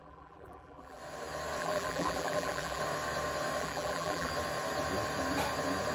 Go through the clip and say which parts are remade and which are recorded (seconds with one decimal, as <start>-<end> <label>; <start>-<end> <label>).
0.0-1.0 remade; 1.0-1.6 recorded; 1.6-2.8 remade; 2.8-3.6 recorded; 3.6-4.3 remade; 4.3-5.9 recorded